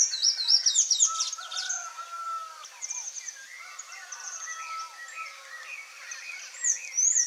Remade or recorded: recorded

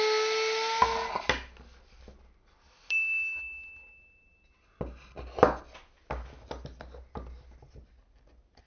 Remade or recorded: recorded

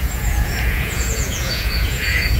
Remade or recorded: remade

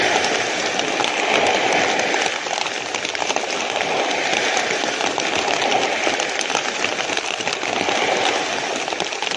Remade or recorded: recorded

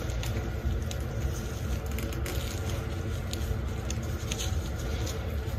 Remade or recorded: recorded